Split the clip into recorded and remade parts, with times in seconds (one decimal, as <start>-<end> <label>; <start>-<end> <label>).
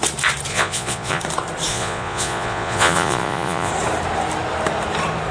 0.0-0.5 recorded; 0.5-1.2 remade; 1.2-1.7 recorded; 1.7-3.7 remade; 3.7-5.3 recorded